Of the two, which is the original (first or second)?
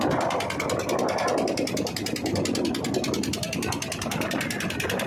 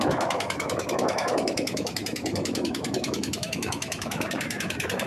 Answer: first